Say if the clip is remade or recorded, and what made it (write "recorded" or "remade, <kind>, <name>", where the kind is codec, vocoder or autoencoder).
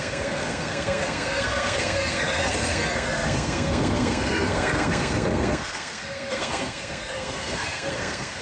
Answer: remade, codec, SNAC